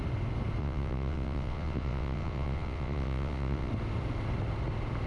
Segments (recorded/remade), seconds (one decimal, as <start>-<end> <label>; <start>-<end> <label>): 0.0-0.6 recorded; 0.6-3.7 remade; 3.7-5.1 recorded